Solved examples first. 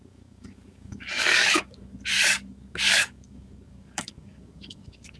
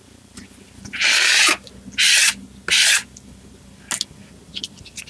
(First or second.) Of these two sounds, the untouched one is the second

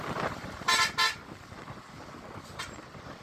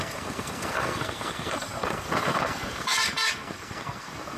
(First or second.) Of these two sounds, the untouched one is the first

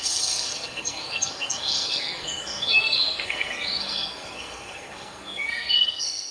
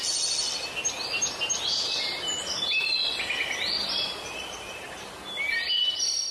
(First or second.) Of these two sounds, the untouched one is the second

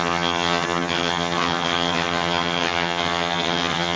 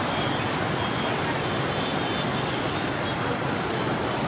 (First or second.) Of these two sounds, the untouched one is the second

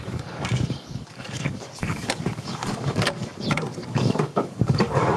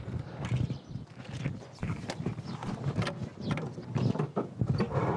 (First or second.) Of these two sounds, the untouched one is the second